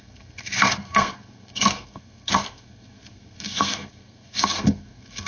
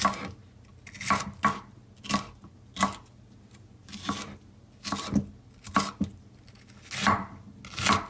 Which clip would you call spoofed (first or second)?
first